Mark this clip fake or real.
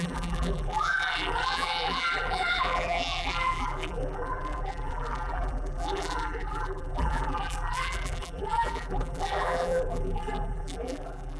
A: fake